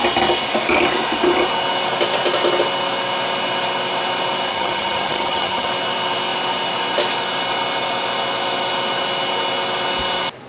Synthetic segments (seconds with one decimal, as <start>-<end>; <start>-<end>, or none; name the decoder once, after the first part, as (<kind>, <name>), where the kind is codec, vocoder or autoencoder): 4.5-5.7 (vocoder, HiFi-GAN)